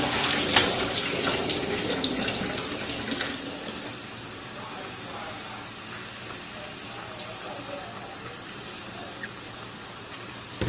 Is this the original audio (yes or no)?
yes